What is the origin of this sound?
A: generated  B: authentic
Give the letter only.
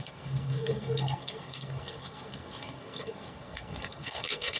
A